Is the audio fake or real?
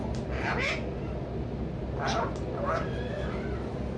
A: real